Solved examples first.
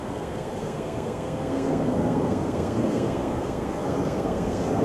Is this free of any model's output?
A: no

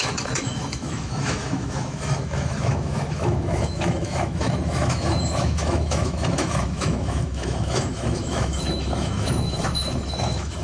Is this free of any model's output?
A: no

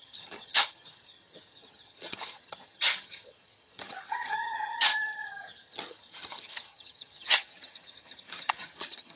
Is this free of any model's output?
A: no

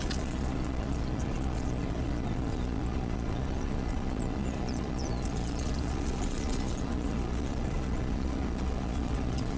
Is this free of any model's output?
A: no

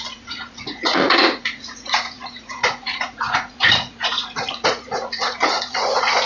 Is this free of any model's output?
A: no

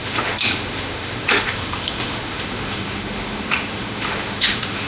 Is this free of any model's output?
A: no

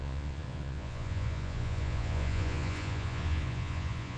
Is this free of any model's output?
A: no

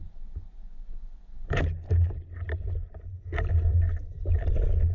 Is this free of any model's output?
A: yes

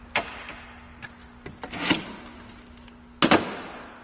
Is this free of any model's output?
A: yes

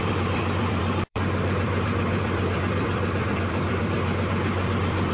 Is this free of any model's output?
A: no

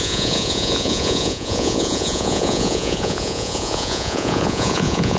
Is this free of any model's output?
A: no